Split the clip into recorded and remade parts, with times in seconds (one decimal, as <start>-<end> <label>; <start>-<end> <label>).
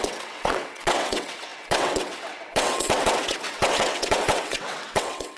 0.0-5.4 remade